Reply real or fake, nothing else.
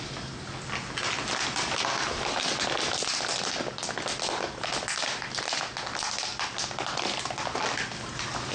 real